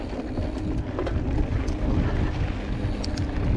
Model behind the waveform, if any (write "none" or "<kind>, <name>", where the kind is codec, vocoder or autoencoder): none